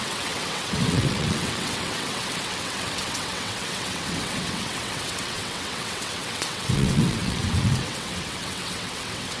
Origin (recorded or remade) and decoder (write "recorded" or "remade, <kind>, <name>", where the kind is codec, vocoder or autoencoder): remade, vocoder, WaveNeXt